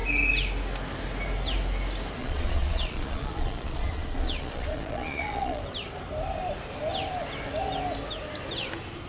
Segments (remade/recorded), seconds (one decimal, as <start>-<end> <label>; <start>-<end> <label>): 0.0-2.2 recorded; 2.2-5.6 remade; 5.6-9.1 recorded